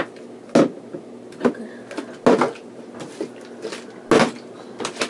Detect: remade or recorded recorded